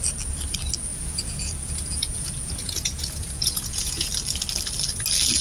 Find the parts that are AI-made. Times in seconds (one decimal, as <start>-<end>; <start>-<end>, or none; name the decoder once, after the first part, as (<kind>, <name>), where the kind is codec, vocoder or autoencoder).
0.9-4.1 (vocoder, Vocos)